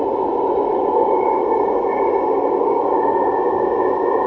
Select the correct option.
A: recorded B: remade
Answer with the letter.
A